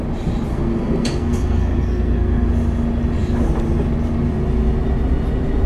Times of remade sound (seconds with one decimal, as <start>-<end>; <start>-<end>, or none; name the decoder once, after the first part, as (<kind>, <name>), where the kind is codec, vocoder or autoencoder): 0.5-2.5 (codec, SNAC)